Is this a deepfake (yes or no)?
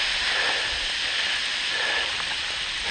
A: no